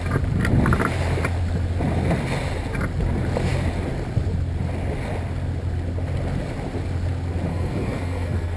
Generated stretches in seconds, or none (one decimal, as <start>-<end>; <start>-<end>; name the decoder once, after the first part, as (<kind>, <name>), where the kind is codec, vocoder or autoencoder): 7.5-8.6 (codec, SNAC)